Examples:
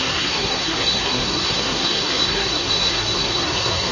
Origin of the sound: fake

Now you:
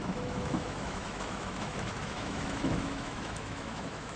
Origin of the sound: fake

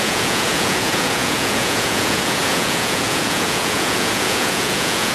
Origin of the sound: fake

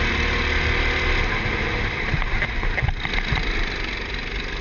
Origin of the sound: real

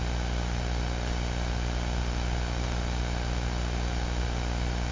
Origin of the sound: real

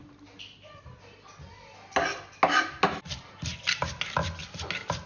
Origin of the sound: real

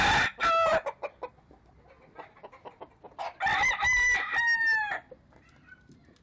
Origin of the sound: real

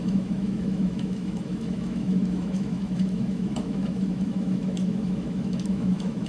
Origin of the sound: fake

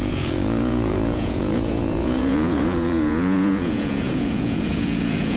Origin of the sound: fake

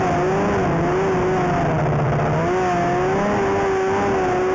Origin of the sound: real